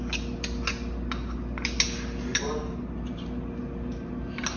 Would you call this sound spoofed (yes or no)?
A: no